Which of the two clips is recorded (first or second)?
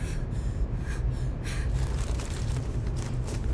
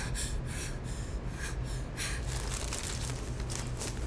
second